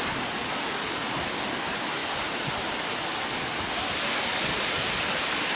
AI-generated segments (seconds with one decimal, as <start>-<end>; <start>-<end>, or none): none